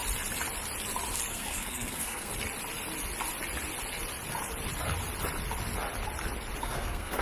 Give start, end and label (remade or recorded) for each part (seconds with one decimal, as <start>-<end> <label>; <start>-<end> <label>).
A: 0.0-1.3 recorded; 1.3-2.3 remade; 2.3-6.6 recorded; 6.6-7.2 remade